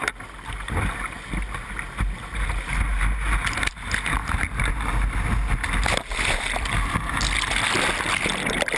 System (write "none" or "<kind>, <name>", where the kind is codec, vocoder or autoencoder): none